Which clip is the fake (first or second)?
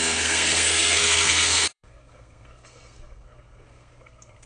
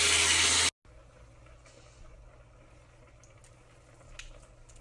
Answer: first